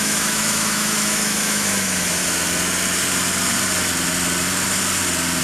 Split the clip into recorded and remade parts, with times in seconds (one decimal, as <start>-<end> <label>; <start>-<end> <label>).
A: 0.0-2.2 remade; 2.2-5.4 recorded